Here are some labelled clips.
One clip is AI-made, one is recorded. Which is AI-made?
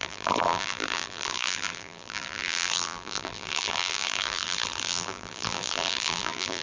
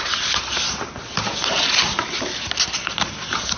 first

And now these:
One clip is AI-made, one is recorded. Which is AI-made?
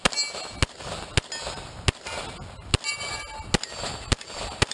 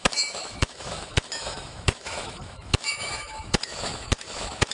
second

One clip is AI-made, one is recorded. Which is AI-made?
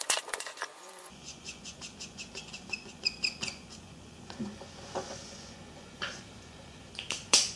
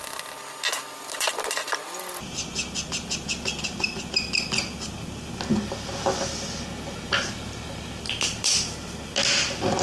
first